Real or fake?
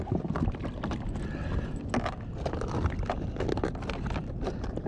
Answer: real